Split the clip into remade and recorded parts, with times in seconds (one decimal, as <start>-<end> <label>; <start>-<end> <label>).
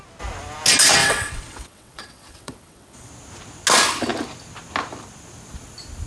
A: 0.0-1.0 recorded; 1.0-3.1 remade; 3.1-6.1 recorded